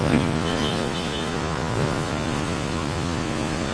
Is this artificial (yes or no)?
yes